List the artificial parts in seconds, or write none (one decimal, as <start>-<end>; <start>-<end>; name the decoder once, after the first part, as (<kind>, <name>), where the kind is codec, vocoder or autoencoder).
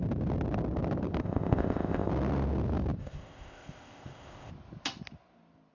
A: 1.2-2.1 (codec, ZipCodec); 3.0-4.5